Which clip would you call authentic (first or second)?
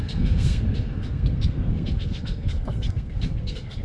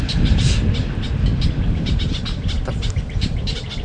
second